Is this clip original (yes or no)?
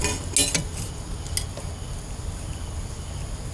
yes